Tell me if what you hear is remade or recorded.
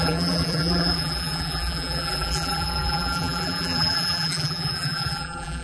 remade